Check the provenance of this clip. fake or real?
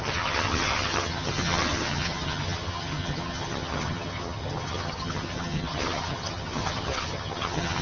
fake